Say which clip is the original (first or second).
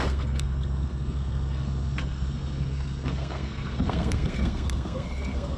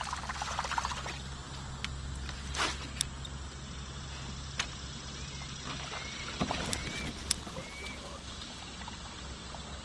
second